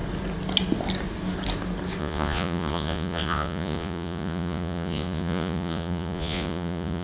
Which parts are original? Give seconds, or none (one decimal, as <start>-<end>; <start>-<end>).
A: 0.0-2.0